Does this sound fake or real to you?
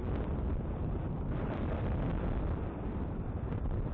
fake